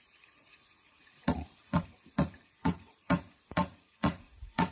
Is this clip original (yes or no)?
no